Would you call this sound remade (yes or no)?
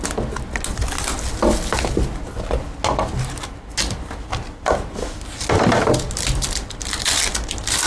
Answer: no